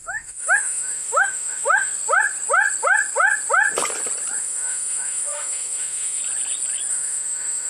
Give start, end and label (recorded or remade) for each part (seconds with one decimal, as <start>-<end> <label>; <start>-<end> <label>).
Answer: 0.0-1.9 remade; 1.9-4.4 recorded; 4.4-6.2 remade; 6.2-6.9 recorded; 6.9-7.7 remade